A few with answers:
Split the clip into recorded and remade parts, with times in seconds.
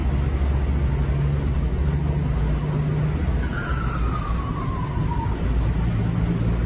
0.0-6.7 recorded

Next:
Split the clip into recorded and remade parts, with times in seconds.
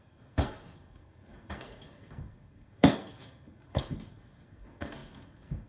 0.0-5.7 remade